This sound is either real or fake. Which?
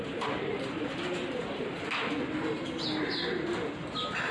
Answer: real